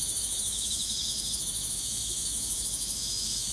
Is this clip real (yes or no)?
no